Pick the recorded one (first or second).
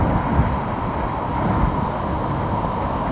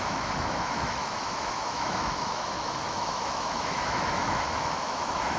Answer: first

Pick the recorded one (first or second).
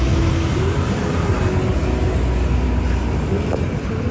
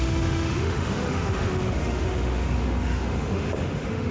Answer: first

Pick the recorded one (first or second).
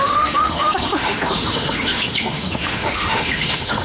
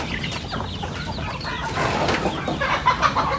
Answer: second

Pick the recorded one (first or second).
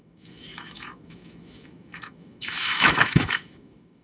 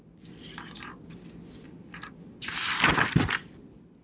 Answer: second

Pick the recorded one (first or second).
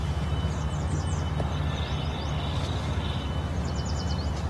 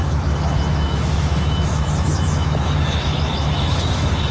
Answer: first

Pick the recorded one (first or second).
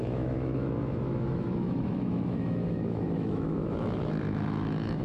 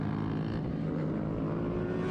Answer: second